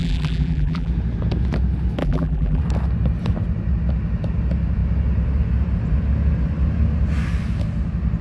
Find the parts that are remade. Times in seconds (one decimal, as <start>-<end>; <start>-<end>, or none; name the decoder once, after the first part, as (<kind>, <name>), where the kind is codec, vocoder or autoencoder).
0.0-0.9 (vocoder, BigVGAN v2); 2.0-2.6